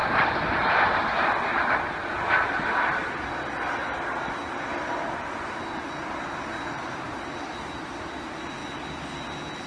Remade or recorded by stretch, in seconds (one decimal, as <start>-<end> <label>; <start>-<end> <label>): 0.0-9.7 recorded